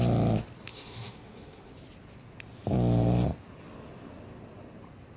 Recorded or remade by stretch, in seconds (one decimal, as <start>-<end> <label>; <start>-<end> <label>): 0.0-0.7 recorded; 0.7-1.7 remade; 1.7-5.2 recorded